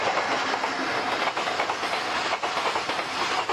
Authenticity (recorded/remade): recorded